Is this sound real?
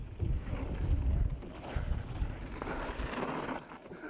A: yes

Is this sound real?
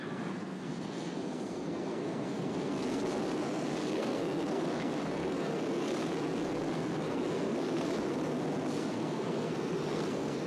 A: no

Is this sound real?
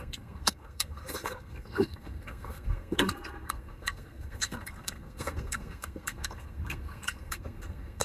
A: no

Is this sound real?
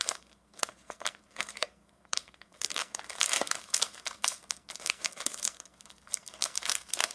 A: no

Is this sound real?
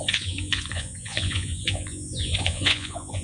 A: no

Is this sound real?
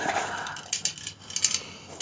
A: yes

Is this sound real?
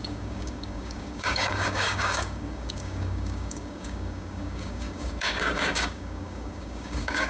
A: no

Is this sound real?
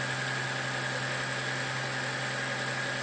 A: yes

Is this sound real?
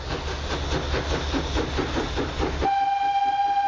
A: yes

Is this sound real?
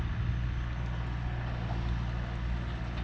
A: yes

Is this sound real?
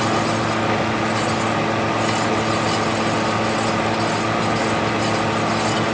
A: yes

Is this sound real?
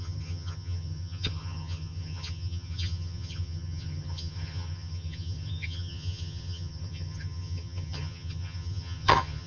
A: no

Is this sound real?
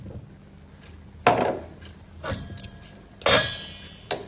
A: yes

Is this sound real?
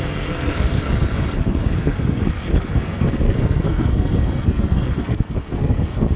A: no